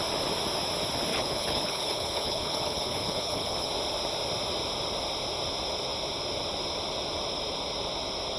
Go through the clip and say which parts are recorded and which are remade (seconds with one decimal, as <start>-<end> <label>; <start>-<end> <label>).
0.0-1.1 recorded; 1.1-3.7 remade; 3.7-8.4 recorded

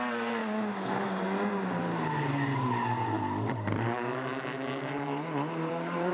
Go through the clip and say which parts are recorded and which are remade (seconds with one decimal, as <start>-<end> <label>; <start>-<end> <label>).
0.0-0.4 remade; 0.4-3.2 recorded; 3.2-6.1 remade

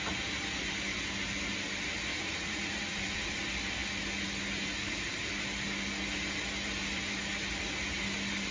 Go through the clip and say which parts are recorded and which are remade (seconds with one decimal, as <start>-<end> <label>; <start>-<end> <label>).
0.0-2.1 recorded; 2.1-3.4 remade; 3.4-8.5 recorded

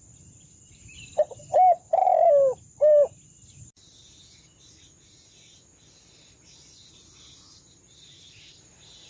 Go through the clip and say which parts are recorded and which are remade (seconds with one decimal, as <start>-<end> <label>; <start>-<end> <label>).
0.0-9.1 recorded

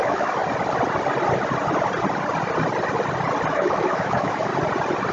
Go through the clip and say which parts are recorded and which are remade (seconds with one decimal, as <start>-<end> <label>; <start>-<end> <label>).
0.0-0.4 remade; 0.4-3.5 recorded; 3.5-4.5 remade; 4.5-5.1 recorded

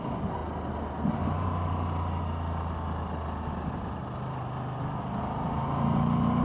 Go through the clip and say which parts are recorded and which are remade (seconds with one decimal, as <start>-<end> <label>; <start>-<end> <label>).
0.0-6.4 recorded